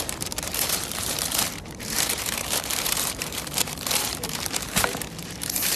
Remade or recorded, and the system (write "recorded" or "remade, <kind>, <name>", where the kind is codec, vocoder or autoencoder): remade, vocoder, BigVGAN v2